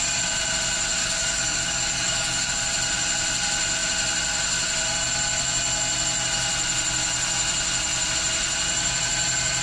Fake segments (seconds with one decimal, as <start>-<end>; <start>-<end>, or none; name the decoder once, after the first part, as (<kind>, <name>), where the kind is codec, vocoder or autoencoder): 1.0-2.5 (codec, DAC)